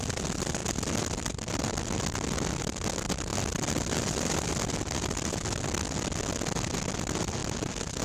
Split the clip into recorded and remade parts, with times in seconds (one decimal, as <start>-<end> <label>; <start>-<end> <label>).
0.0-8.0 recorded